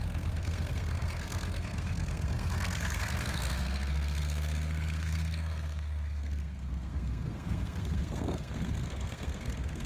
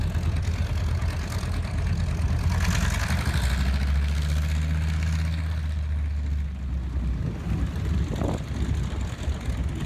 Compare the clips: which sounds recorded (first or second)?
second